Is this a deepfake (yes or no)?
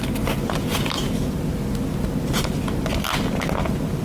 no